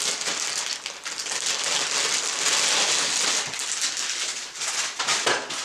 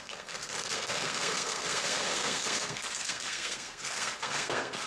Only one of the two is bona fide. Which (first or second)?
first